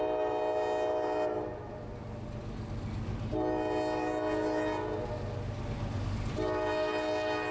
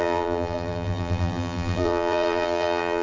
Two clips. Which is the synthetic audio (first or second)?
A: second